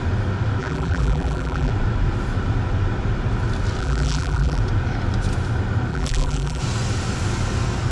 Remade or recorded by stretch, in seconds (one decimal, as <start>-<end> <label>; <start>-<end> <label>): 0.0-0.6 recorded; 0.6-1.7 remade; 1.7-3.8 recorded; 3.8-4.6 remade; 4.6-5.9 recorded; 5.9-6.6 remade; 6.6-7.9 recorded